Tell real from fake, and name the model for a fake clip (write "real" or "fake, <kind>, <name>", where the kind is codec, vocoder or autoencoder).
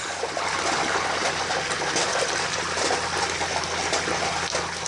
real